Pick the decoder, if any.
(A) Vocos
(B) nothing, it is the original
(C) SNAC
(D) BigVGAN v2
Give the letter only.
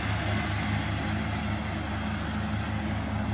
B